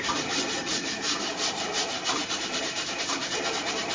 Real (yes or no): no